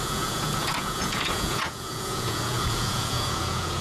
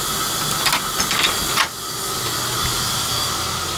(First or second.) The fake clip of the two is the first